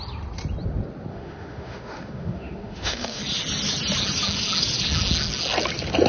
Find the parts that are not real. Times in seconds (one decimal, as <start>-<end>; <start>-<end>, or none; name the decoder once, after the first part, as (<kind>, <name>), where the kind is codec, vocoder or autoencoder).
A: 1.1-3.2 (autoencoder, DAC-VAE)